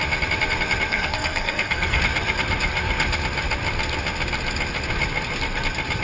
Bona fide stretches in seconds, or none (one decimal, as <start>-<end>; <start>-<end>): 0.0-0.9; 2.0-6.0